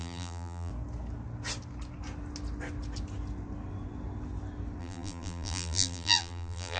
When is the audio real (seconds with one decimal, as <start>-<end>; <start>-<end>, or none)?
0.7-4.8